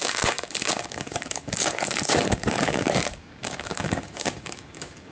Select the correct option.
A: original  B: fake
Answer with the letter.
B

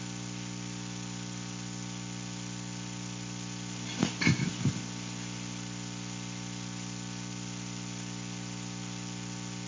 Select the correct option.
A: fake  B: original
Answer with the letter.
B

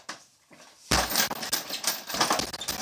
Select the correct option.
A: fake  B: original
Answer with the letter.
B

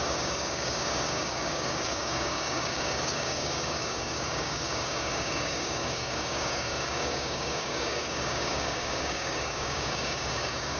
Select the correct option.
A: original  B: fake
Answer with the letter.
B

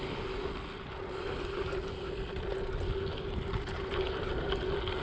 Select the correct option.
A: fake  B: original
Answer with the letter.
B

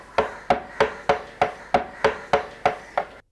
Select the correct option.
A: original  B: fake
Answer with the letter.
A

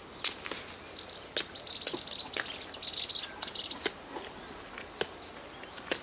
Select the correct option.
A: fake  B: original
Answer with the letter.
B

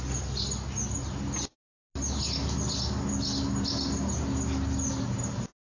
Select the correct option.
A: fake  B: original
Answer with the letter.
B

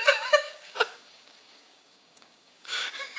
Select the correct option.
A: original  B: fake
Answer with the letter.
B